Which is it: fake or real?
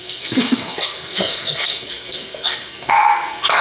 fake